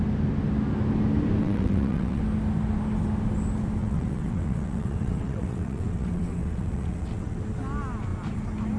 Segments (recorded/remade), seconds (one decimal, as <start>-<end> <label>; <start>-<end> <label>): 0.0-1.4 recorded; 1.4-2.2 remade; 2.2-3.8 recorded; 3.8-7.4 remade; 7.4-8.8 recorded